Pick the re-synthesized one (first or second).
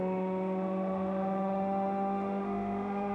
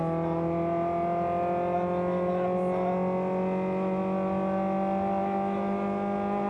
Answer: first